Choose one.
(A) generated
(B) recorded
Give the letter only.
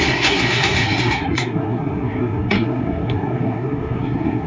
A